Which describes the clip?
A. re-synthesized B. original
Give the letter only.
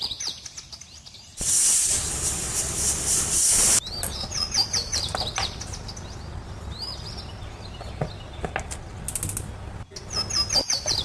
B